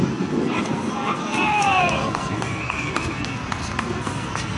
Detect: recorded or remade remade